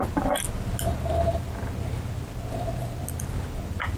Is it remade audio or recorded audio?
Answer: recorded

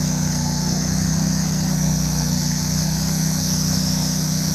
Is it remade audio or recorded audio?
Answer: remade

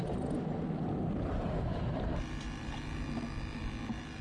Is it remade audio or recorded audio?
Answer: recorded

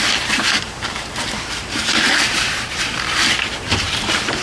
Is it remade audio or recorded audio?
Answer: remade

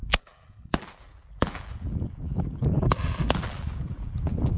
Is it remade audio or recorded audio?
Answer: remade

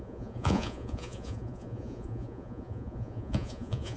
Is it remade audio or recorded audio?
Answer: remade